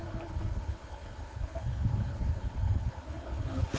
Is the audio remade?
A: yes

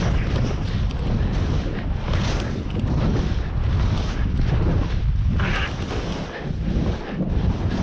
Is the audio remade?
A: no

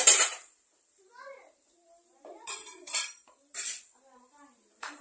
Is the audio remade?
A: yes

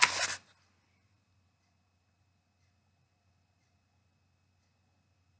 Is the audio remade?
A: no